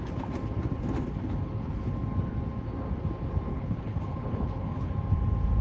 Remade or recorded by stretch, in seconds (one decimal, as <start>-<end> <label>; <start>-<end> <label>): 0.0-1.2 recorded; 1.2-1.8 remade; 1.8-3.5 recorded; 3.5-4.9 remade; 4.9-5.6 recorded